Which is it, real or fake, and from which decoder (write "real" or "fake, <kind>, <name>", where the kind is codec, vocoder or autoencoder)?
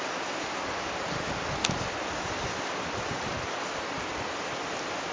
real